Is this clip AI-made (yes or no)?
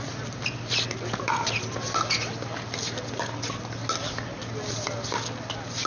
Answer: no